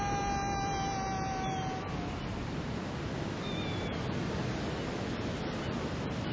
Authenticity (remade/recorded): recorded